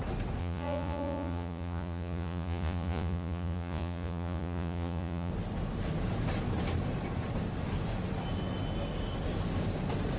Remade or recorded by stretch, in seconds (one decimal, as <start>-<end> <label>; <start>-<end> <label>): 0.0-0.4 recorded; 0.4-5.3 remade; 5.3-10.2 recorded